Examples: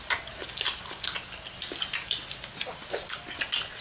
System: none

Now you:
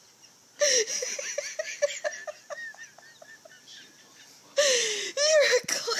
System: none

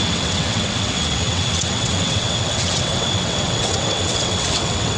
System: vocoder, WaveNeXt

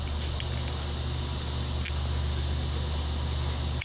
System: none